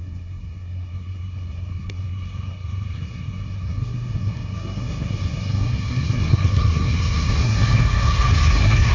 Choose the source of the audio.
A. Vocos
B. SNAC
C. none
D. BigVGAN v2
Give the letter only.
B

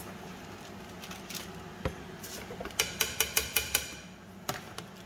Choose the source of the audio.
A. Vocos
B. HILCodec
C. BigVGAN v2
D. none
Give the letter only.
D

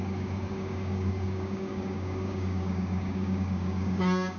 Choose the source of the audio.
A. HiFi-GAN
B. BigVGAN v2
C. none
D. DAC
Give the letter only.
D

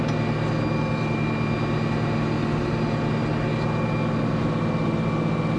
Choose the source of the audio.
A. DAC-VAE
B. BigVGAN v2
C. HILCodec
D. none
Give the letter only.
D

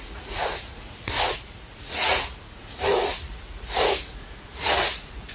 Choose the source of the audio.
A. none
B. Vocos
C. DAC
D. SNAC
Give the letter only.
B